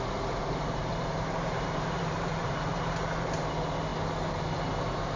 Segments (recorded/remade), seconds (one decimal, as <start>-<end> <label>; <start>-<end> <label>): 0.0-0.4 recorded; 0.4-3.5 remade; 3.5-5.2 recorded